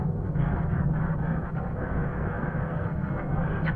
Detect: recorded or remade remade